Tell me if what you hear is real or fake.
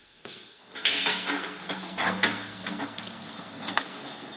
fake